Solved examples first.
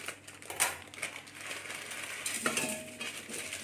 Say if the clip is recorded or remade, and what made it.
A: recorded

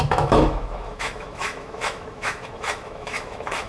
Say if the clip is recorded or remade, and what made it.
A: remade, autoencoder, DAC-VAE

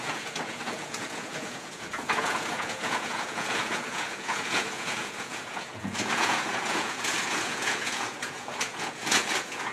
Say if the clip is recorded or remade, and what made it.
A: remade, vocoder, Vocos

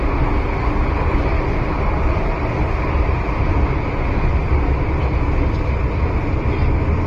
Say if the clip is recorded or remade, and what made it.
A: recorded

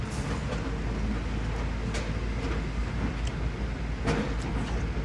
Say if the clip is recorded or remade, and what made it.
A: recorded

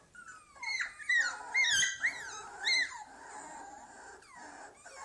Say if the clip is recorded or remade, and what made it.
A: recorded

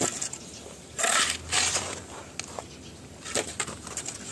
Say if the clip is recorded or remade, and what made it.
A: recorded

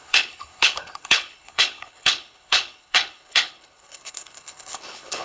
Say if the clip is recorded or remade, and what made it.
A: remade, codec, HILCodec